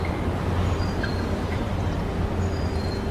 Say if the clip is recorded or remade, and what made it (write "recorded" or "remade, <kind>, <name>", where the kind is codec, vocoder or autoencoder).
recorded